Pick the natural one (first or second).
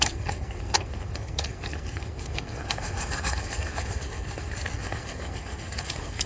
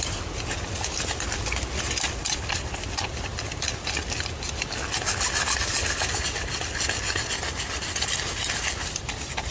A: second